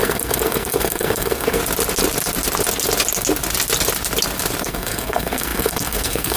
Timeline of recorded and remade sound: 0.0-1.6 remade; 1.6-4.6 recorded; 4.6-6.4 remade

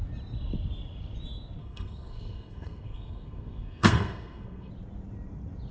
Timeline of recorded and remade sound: 0.0-1.6 recorded; 1.6-4.7 remade; 4.7-5.7 recorded

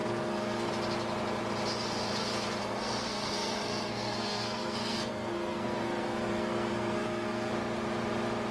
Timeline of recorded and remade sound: 0.0-0.7 remade; 0.7-2.6 recorded; 2.6-7.5 remade; 7.5-8.5 recorded

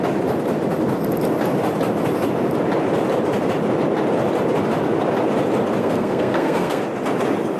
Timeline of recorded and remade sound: 0.0-5.8 recorded; 5.8-6.8 remade; 6.8-7.6 recorded

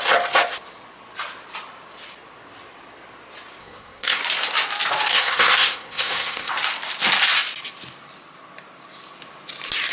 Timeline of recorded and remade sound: 0.0-3.6 recorded; 3.6-4.2 remade; 4.2-5.1 recorded; 5.1-6.5 remade; 6.5-9.9 recorded